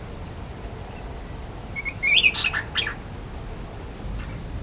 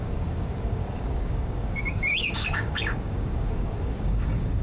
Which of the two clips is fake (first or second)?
second